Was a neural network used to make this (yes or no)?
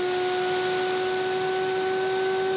no